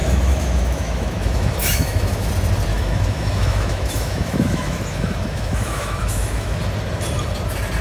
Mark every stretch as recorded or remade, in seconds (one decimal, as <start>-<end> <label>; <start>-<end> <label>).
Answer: 0.0-2.3 remade; 2.3-2.7 recorded; 2.7-6.6 remade; 6.6-7.8 recorded